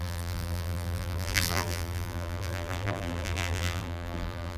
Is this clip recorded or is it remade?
remade